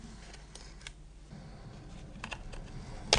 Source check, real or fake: real